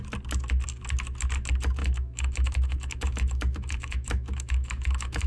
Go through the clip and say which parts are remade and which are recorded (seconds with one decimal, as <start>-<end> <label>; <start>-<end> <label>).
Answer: 0.0-1.8 recorded; 1.8-5.3 remade